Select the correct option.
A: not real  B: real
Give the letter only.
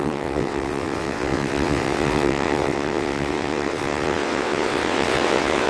A